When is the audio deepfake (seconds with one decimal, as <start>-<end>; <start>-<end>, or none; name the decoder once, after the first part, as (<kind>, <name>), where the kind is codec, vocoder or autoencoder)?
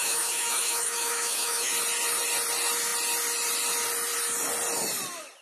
0.0-1.7 (autoencoder, DAC-VAE)